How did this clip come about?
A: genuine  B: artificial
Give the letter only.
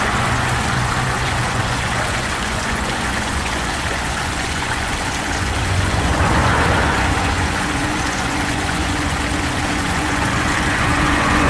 B